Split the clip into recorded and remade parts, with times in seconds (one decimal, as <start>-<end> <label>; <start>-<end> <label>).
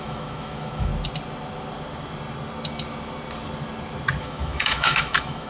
0.0-0.9 remade; 0.9-4.2 recorded; 4.2-5.5 remade